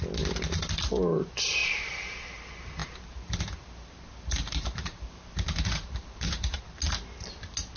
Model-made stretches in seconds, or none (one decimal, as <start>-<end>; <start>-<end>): 1.6-2.4; 2.8-6.6